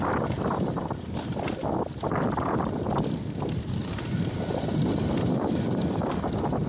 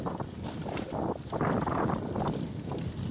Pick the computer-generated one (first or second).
second